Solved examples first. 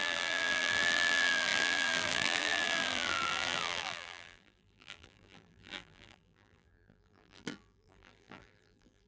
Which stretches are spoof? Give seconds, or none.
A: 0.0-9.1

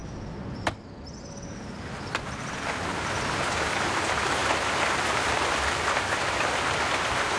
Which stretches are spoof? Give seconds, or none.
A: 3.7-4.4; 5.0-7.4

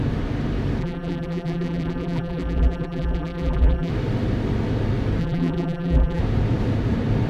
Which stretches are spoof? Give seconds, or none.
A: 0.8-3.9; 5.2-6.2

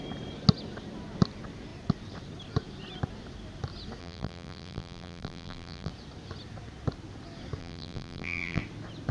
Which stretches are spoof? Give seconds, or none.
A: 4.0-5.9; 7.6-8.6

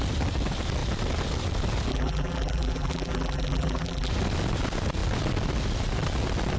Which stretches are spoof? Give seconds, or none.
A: 1.9-4.1

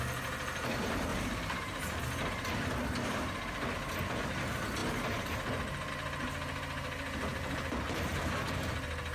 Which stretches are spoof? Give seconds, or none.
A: 1.1-2.0; 7.3-8.1

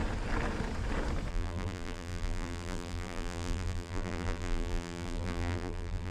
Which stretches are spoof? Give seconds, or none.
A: 1.3-6.1

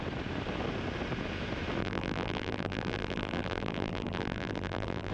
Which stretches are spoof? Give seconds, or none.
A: 1.8-5.1